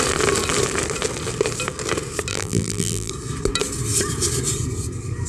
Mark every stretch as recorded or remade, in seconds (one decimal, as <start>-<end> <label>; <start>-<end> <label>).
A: 0.0-2.3 recorded; 2.3-3.1 remade; 3.1-5.3 recorded